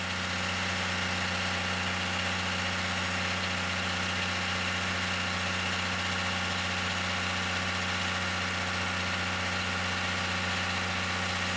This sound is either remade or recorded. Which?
recorded